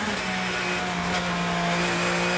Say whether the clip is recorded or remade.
recorded